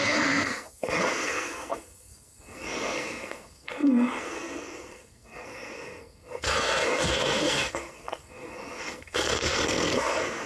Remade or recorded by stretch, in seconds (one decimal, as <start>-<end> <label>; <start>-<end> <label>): 0.0-10.5 remade